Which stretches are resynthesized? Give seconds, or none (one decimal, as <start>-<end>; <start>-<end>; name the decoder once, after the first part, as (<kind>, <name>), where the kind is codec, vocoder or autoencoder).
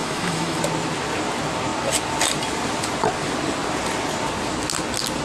0.0-0.6 (autoencoder, DAC-VAE)